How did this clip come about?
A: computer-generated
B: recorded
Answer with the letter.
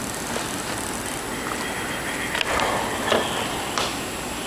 B